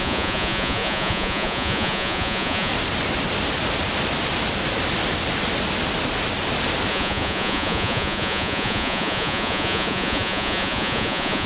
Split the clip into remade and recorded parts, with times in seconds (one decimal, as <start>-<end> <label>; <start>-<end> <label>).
0.0-2.7 remade; 2.7-6.9 recorded; 6.9-11.5 remade